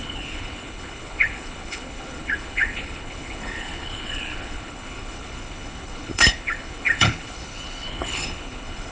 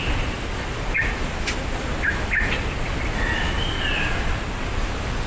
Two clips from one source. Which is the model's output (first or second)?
first